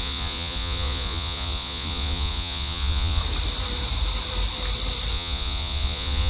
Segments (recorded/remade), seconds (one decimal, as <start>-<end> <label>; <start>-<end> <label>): 0.0-3.2 remade; 3.2-5.1 recorded; 5.1-6.3 remade